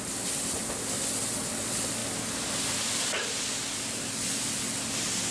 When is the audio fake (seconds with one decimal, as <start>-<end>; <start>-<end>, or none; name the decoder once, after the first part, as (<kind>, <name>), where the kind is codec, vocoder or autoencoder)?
none